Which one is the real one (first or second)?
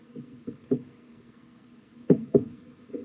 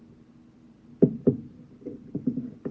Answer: second